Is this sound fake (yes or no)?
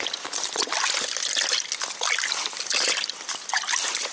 no